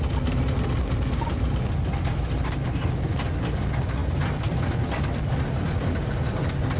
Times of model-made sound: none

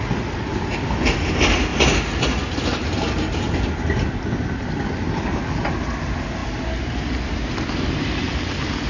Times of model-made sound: none

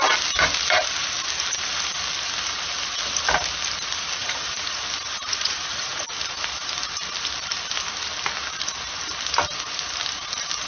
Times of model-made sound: 4.2-4.8; 5.3-6.0

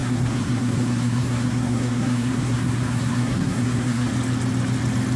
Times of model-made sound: 0.0-4.1

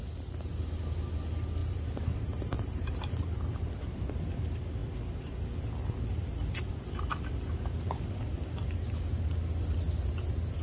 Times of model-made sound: 1.6-4.0

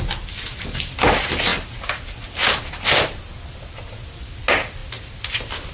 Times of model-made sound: none

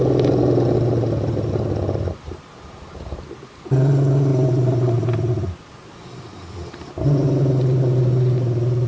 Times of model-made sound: none

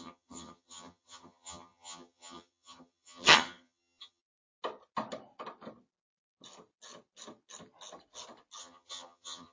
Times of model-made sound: 0.0-4.2; 8.6-9.5